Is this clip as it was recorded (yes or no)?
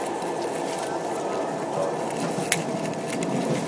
yes